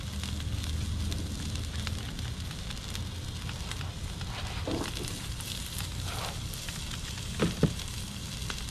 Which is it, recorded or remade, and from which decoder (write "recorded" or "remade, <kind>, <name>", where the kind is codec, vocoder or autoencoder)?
recorded